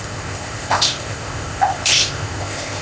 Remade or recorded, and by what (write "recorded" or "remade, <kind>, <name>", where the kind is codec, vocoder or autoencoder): remade, codec, ZipCodec